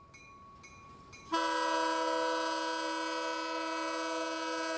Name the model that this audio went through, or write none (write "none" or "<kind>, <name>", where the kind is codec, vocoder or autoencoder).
none